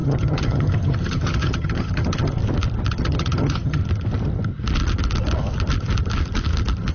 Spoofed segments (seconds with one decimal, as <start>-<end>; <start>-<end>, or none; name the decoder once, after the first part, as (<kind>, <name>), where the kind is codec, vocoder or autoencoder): 0.0-2.4 (vocoder, HiFi-GAN); 2.9-3.8